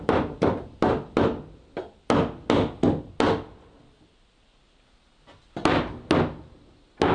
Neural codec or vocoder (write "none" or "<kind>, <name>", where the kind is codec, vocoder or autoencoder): none